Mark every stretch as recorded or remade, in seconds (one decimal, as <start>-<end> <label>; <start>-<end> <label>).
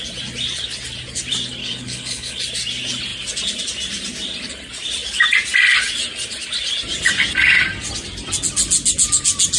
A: 0.0-1.6 recorded; 1.6-2.4 remade; 2.4-9.6 recorded